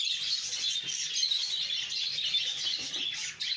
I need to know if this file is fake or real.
real